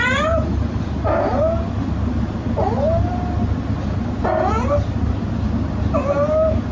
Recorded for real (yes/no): yes